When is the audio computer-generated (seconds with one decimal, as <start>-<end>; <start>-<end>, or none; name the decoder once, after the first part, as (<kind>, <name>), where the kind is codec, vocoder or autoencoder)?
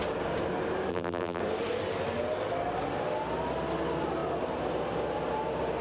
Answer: 0.9-1.4 (vocoder, BigVGAN v2)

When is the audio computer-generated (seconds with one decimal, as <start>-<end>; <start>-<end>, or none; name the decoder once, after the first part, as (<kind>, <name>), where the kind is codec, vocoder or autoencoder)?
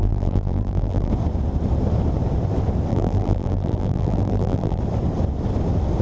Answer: 0.0-1.1 (vocoder, BigVGAN v2); 2.9-4.8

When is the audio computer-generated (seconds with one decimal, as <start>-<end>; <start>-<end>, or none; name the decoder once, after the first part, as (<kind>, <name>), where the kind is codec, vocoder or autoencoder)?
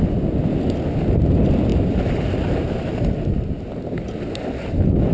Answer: 1.7-3.1 (vocoder, BigVGAN v2)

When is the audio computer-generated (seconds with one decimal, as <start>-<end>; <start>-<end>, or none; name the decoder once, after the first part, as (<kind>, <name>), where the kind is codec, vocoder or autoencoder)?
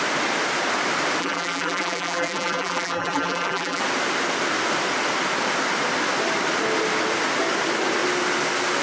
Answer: 1.2-3.8 (vocoder, BigVGAN v2)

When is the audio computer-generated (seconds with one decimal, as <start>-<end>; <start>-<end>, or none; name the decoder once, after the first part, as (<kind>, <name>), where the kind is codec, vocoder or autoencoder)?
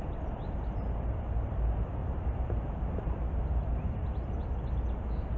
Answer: 2.0-3.2 (vocoder, BigVGAN v2)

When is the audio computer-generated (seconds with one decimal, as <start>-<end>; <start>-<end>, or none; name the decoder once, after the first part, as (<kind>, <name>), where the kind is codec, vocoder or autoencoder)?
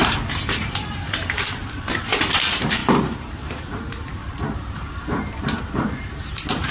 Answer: 0.0-6.7 (vocoder, BigVGAN v2)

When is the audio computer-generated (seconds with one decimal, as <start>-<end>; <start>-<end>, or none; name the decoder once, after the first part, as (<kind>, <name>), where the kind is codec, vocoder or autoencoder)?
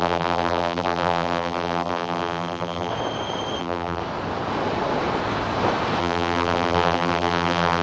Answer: 0.0-2.9 (vocoder, BigVGAN v2); 3.6-4.0; 6.0-7.8